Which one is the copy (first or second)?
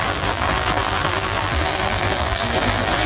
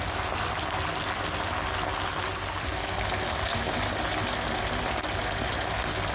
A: first